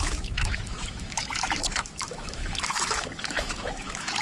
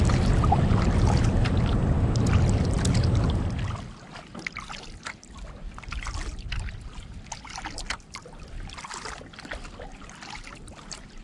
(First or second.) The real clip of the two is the second